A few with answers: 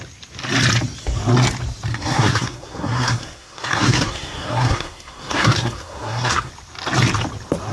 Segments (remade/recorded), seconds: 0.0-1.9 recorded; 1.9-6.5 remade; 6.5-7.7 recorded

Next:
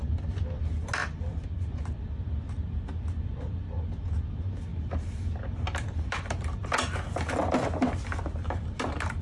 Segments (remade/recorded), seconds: 0.0-1.0 recorded; 1.0-1.7 remade; 1.7-4.7 recorded; 4.7-6.5 remade; 6.5-9.2 recorded

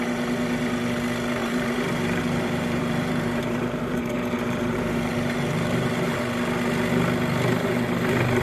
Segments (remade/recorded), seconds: 0.0-1.4 recorded; 1.4-6.2 remade; 6.2-8.4 recorded

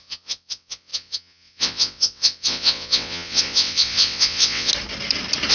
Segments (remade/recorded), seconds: 0.0-4.7 remade; 4.7-5.5 recorded

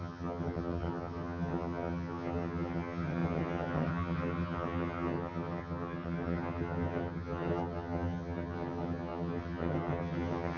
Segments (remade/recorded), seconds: 0.0-10.6 remade

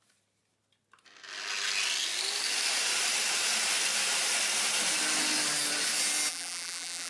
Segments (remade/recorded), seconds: 0.0-6.3 recorded; 6.3-7.1 remade

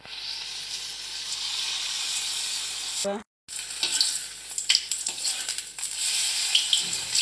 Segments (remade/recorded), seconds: 0.0-4.6 recorded; 4.6-5.3 remade; 5.3-5.7 recorded; 5.7-6.3 remade; 6.3-7.2 recorded